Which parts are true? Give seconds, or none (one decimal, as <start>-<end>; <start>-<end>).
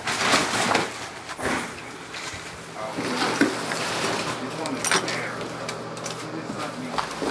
0.0-7.3